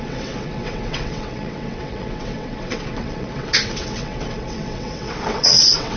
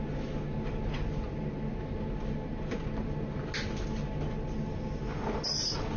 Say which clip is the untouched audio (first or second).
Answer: second